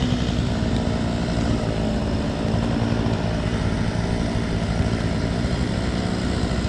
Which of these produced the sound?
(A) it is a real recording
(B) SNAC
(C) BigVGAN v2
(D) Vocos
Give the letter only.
A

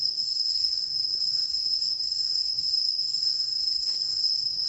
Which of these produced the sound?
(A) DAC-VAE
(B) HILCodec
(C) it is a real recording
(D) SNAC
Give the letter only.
D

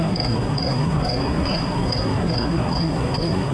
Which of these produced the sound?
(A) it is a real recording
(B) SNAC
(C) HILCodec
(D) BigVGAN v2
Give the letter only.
B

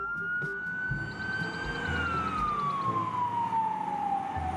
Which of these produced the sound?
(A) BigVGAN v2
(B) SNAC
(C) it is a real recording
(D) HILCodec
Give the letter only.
C